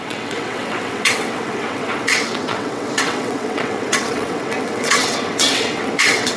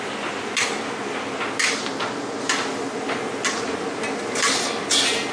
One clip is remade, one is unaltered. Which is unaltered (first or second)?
second